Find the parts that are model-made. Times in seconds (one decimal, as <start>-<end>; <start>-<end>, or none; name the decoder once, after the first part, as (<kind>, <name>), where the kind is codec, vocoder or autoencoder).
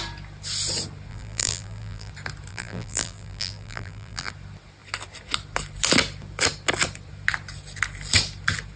1.1-2.1 (vocoder, BigVGAN v2); 2.5-4.3